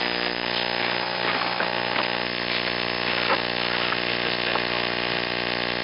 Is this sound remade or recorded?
recorded